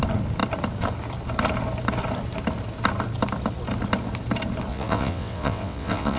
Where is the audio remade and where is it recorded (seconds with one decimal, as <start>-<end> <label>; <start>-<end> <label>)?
0.0-4.7 recorded; 4.7-6.2 remade